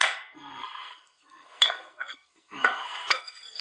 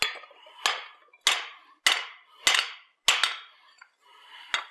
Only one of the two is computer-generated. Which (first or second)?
first